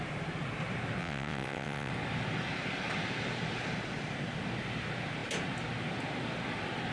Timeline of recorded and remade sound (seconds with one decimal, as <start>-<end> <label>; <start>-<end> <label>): 0.0-1.0 recorded; 1.0-1.9 remade; 1.9-6.9 recorded